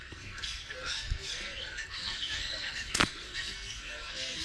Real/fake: fake